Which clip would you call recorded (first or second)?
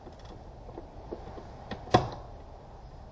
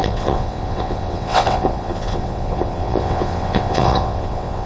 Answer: first